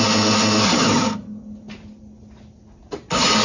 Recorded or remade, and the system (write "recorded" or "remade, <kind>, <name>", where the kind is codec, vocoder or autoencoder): recorded